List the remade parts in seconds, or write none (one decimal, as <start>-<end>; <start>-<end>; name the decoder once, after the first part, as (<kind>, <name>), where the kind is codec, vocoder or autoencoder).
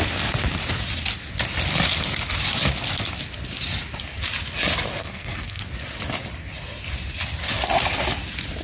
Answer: 5.0-5.6 (codec, SNAC)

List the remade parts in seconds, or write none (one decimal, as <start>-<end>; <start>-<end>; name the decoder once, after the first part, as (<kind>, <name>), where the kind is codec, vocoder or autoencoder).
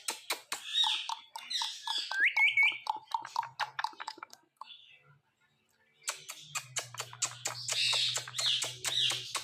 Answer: 4.0-4.9 (codec, SNAC)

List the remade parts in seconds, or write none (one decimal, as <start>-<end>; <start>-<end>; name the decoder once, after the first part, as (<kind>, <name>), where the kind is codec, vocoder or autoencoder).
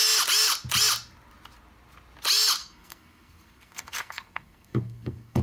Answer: 2.6-5.4 (codec, SNAC)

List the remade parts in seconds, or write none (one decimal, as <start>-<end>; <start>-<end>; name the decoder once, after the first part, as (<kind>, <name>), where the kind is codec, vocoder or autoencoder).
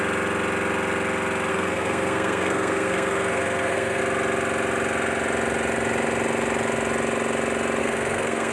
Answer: 1.5-4.0 (codec, SNAC); 7.8-8.5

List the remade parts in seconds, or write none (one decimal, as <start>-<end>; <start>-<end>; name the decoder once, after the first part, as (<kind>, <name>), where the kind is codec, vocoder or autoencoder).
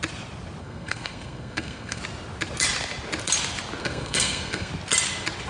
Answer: 0.6-2.0 (codec, SNAC); 3.8-4.7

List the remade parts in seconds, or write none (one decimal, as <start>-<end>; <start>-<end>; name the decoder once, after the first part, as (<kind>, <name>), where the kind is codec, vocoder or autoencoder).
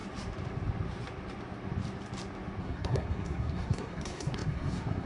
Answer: 2.6-5.1 (codec, SNAC)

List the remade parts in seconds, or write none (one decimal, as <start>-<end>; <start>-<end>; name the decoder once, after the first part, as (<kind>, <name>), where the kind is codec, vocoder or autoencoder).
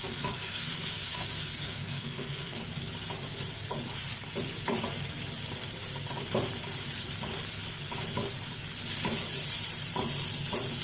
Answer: 0.0-2.6 (codec, SNAC)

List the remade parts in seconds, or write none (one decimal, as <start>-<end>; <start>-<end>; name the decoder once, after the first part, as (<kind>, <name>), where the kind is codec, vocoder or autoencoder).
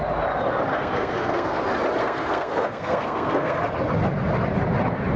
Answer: 0.7-1.6 (codec, SNAC); 2.0-3.6